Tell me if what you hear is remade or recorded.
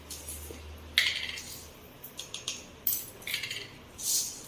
recorded